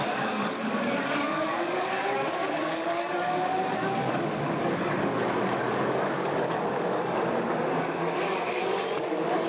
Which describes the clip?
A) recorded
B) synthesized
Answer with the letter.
B